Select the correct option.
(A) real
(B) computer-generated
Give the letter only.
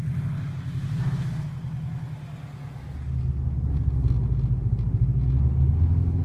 A